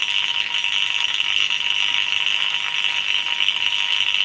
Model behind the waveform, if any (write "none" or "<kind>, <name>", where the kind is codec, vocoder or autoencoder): autoencoder, DAC-VAE